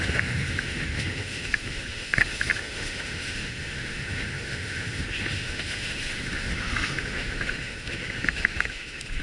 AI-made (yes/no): yes